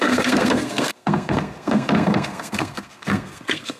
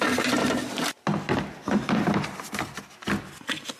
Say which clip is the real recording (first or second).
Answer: second